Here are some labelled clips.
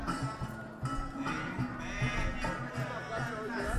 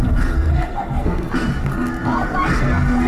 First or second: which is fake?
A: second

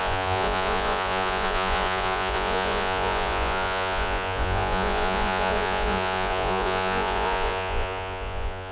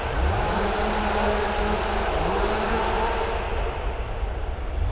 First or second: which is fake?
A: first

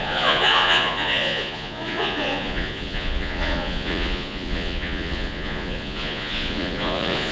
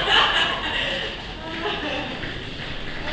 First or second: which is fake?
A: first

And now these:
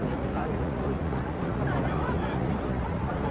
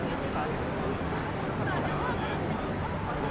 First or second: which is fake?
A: first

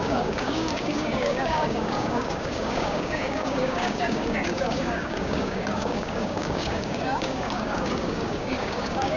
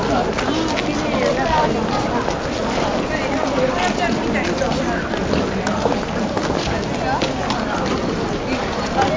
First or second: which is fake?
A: first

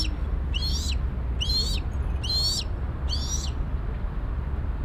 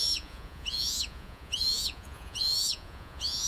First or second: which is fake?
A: second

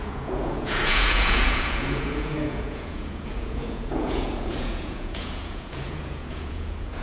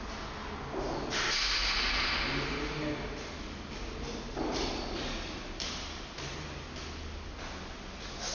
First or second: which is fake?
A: first